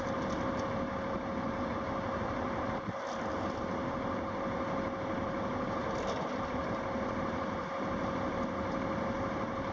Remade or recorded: recorded